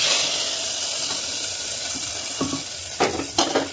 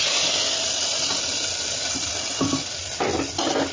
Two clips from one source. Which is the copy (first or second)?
first